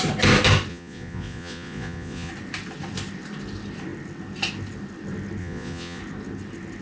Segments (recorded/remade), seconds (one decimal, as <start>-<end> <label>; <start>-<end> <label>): 0.0-0.7 recorded; 0.7-2.3 remade; 2.3-5.4 recorded; 5.4-6.0 remade; 6.0-6.8 recorded